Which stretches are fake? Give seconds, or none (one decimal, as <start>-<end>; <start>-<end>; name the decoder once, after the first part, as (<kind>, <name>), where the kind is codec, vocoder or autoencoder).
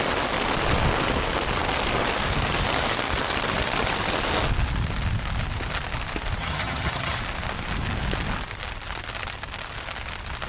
6.4-7.2 (vocoder, HiFi-GAN)